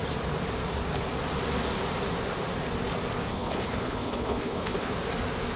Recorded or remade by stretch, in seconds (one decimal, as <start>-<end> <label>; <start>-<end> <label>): 0.0-3.3 recorded; 3.3-4.9 remade; 4.9-5.6 recorded